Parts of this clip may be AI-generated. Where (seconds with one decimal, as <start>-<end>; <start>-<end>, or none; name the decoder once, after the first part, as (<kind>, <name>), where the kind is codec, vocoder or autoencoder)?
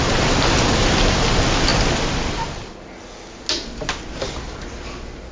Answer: none